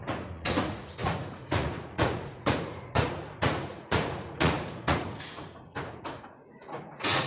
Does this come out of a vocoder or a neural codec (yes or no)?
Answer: yes